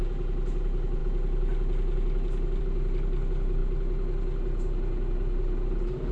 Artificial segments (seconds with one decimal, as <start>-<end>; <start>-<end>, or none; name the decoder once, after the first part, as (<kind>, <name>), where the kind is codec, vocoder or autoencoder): none